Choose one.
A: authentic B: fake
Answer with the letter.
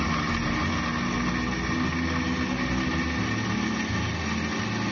A